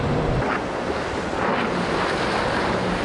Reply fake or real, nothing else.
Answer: real